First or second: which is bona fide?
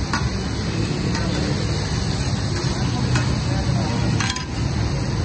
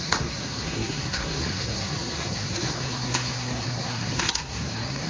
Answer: first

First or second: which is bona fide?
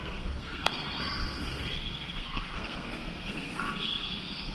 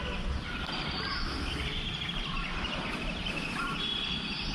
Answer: second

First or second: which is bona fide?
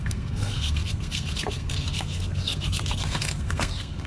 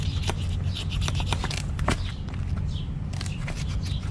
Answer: second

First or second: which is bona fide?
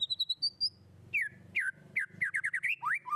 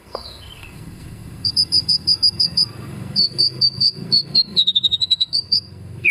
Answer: first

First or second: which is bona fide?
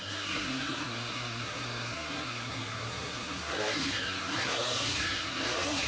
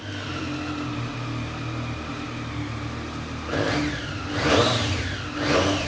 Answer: second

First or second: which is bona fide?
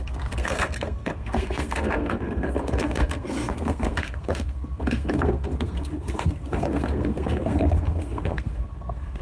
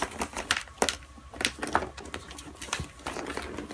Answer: second